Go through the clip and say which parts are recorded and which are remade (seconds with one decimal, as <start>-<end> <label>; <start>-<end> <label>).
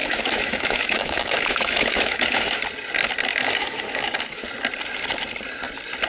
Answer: 0.0-2.6 remade; 2.6-3.3 recorded; 3.3-4.4 remade; 4.4-6.1 recorded